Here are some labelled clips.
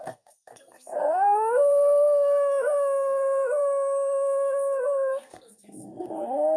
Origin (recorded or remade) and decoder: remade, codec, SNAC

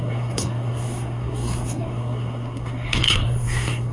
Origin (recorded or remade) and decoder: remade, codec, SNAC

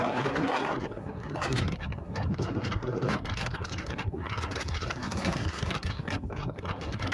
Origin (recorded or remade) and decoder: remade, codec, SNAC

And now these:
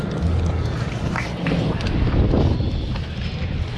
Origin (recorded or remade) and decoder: recorded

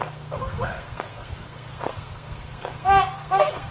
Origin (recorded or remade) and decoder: remade, codec, SNAC